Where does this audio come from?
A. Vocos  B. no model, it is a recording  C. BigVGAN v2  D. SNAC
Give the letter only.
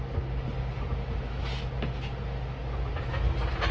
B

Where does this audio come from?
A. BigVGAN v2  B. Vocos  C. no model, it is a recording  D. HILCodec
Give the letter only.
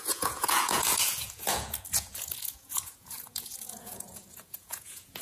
B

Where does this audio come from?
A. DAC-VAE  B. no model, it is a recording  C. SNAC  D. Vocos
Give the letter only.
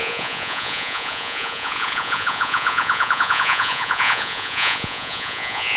D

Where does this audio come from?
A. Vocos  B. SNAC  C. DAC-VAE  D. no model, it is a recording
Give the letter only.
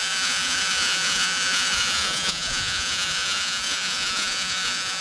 A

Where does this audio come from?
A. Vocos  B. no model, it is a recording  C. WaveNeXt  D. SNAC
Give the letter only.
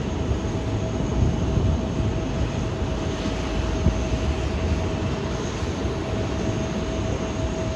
B